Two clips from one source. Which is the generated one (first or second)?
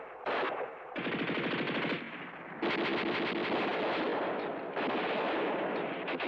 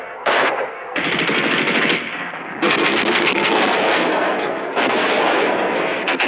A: second